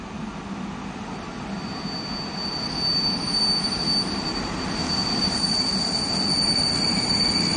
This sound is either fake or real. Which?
real